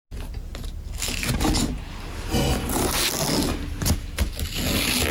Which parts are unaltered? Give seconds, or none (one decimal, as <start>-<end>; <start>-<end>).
0.0-5.1